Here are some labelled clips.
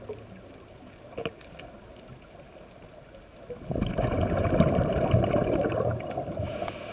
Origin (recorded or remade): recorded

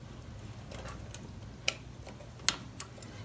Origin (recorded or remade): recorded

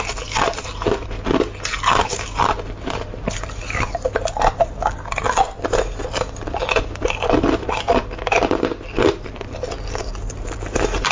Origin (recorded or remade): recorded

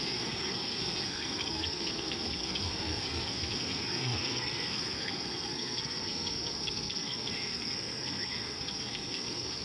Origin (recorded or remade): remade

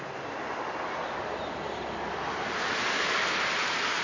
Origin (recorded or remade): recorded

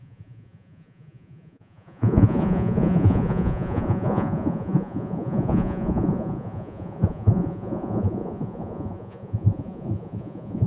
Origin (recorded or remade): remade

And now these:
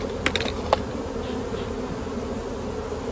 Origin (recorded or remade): recorded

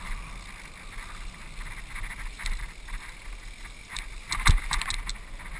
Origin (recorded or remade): recorded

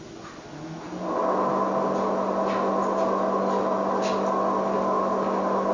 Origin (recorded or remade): recorded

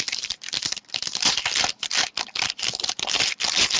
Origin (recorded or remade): recorded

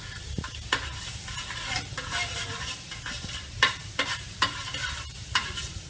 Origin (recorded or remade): remade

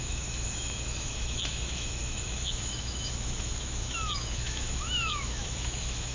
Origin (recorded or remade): remade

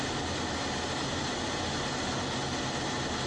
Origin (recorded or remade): recorded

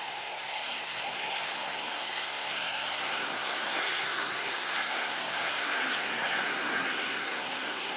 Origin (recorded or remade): remade